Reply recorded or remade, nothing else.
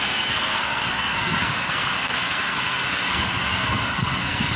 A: remade